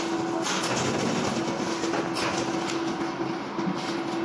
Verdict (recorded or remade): recorded